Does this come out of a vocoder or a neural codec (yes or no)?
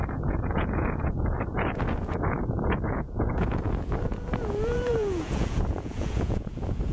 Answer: yes